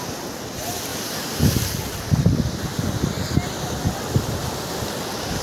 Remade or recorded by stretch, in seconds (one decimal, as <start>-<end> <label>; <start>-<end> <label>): 0.0-0.9 recorded; 0.9-1.4 remade; 1.4-5.4 recorded